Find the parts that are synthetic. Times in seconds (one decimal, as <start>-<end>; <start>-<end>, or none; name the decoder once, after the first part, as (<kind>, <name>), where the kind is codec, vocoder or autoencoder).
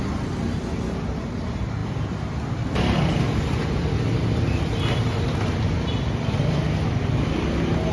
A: none